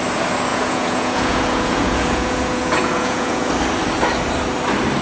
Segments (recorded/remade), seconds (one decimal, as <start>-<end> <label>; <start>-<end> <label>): 0.0-0.5 recorded; 0.5-3.5 remade; 3.5-5.0 recorded